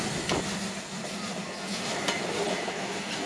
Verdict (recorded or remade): recorded